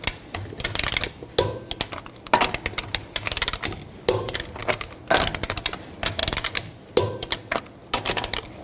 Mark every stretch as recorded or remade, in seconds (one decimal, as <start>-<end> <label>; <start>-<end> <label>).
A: 0.0-8.6 recorded